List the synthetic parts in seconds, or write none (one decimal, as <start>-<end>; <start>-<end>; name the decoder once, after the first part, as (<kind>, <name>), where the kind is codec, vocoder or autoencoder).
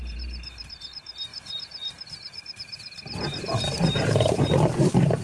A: 0.0-5.2 (vocoder, BigVGAN v2)